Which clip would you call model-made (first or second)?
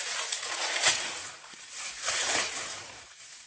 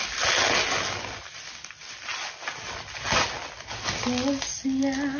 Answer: first